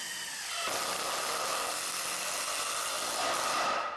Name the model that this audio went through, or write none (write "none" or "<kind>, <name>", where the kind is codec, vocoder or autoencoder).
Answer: none